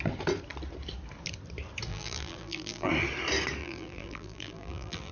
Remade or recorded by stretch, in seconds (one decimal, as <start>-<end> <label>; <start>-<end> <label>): 0.0-1.9 recorded; 1.9-2.9 remade; 2.9-3.6 recorded; 3.6-5.1 remade

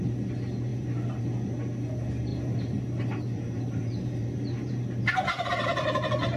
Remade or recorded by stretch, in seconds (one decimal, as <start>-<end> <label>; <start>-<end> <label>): 0.0-0.7 recorded; 0.7-1.2 remade; 1.2-2.3 recorded; 2.3-6.4 remade

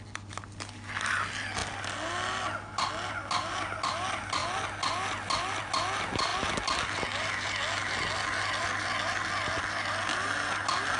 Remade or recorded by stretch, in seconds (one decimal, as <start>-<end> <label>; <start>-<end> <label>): 0.0-11.0 recorded

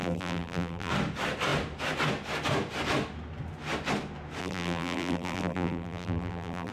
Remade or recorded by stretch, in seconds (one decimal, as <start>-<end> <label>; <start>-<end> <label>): 0.0-0.9 remade; 0.9-4.4 recorded; 4.4-6.7 remade

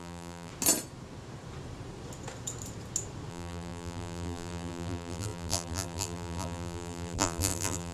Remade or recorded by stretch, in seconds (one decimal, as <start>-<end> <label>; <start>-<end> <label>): 0.0-0.5 remade; 0.5-3.3 recorded; 3.3-7.9 remade

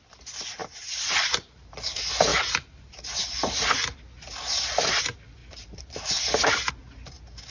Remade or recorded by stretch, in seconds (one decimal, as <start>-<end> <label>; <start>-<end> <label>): 0.0-0.6 recorded; 0.6-1.7 remade; 1.7-2.3 recorded; 2.3-4.0 remade; 4.0-5.4 recorded; 5.4-6.7 remade; 6.7-7.5 recorded

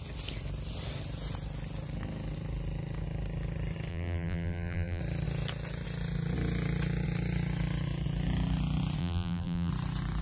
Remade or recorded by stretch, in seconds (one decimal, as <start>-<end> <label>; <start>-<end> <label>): 0.0-3.9 recorded; 3.9-5.0 remade; 5.0-9.0 recorded; 9.0-9.7 remade; 9.7-10.2 recorded